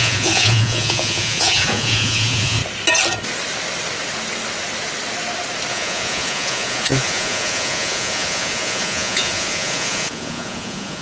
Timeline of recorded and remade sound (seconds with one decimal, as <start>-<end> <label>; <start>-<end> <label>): 0.0-2.6 remade; 2.6-5.7 recorded; 5.7-11.0 remade